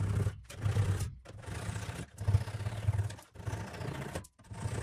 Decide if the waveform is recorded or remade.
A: remade